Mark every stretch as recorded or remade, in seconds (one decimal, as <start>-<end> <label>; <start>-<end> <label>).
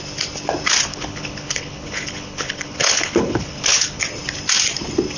0.0-0.9 recorded; 0.9-4.0 remade; 4.0-5.2 recorded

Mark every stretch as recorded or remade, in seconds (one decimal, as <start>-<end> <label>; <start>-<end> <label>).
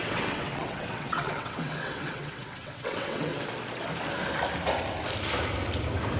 0.0-3.3 remade; 3.3-6.2 recorded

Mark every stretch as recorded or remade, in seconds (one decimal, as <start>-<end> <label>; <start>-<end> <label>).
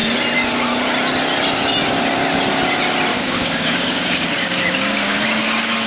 0.0-3.1 recorded; 3.1-5.9 remade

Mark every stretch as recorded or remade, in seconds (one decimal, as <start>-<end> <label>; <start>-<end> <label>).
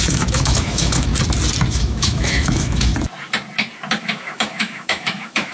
0.0-1.1 remade; 1.1-1.7 recorded; 1.7-2.9 remade; 2.9-4.0 recorded; 4.0-5.5 remade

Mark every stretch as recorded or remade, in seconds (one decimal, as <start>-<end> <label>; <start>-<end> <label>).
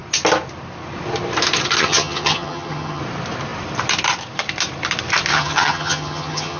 0.0-1.8 recorded; 1.8-3.0 remade; 3.0-5.3 recorded; 5.3-6.6 remade